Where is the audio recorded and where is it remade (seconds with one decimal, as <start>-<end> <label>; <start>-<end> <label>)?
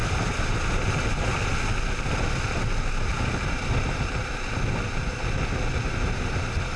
0.0-0.6 remade; 0.6-3.1 recorded; 3.1-5.1 remade; 5.1-6.8 recorded